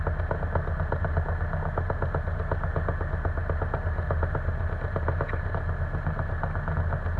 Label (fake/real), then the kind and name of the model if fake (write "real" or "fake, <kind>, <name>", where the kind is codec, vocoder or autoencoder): real